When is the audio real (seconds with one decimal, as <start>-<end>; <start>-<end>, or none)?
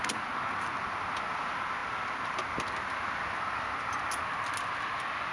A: 0.0-5.3